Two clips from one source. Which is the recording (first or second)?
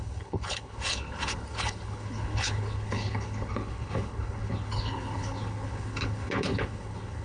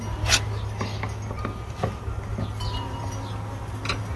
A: second